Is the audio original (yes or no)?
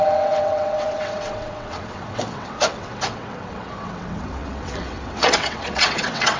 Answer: no